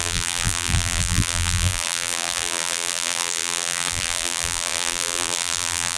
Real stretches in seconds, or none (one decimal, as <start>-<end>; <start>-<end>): none